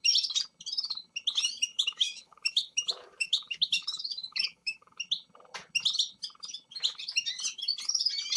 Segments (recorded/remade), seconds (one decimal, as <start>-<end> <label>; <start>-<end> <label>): 0.0-1.7 recorded; 1.7-5.0 remade; 5.0-8.4 recorded